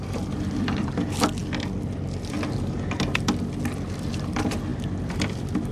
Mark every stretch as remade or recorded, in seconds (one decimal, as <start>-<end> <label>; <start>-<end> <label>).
0.0-1.4 remade; 1.4-4.1 recorded; 4.1-5.7 remade